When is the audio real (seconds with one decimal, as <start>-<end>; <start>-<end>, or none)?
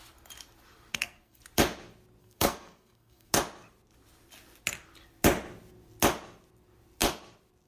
0.0-0.9; 1.4-2.2; 3.3-7.7